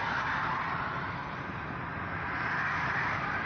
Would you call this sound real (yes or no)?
yes